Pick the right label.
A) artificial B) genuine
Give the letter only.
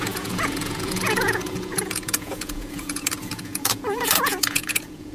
A